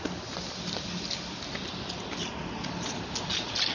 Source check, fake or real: real